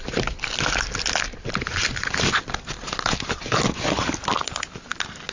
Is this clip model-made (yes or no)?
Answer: no